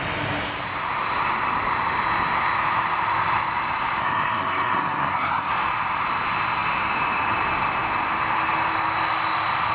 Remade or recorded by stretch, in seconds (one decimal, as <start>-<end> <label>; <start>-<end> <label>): 0.0-4.0 recorded; 4.0-5.5 remade; 5.5-9.7 recorded